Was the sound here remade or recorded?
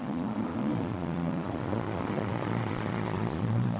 remade